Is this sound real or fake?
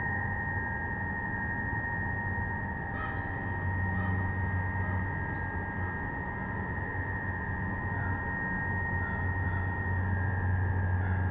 real